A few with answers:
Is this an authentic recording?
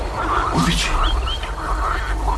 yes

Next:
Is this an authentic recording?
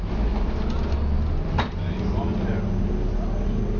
yes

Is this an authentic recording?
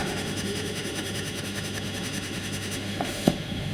no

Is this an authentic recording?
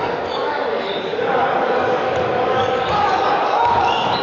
no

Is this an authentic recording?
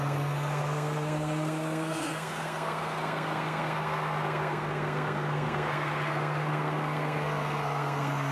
no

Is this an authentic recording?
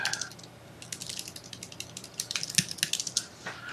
yes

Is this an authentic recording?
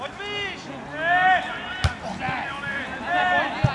yes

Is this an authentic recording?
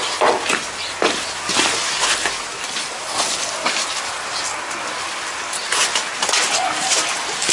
yes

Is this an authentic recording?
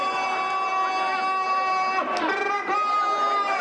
yes